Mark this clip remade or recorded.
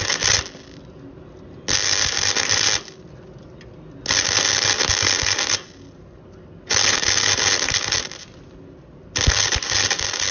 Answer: recorded